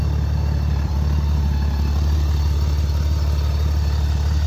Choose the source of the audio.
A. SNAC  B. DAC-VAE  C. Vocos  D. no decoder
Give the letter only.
D